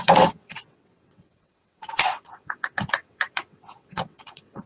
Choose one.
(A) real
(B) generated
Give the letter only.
B